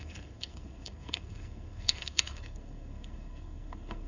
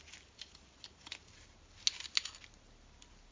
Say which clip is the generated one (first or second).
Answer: first